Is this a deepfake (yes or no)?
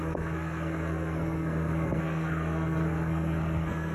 yes